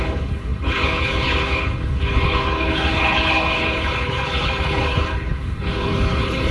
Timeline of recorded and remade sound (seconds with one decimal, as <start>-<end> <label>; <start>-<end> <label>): 0.0-6.5 remade